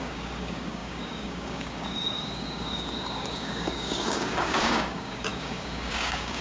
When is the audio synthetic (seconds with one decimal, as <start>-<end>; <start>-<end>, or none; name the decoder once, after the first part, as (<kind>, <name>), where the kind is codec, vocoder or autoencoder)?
0.0-6.4 (codec, DAC)